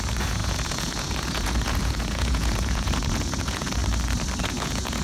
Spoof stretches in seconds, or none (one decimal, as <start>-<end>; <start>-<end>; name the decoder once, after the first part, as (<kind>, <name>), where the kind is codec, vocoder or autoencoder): 0.0-3.8 (vocoder, Vocos); 4.4-5.0